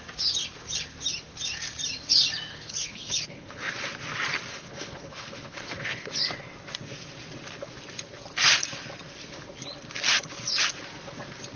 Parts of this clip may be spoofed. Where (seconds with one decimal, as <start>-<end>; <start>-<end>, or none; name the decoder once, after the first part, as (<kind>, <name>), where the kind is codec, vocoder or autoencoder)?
2.5-3.7 (codec, HILCodec); 4.5-6.1